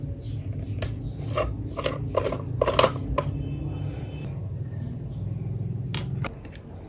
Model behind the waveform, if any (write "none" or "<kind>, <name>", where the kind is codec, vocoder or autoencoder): none